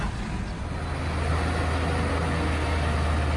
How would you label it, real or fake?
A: real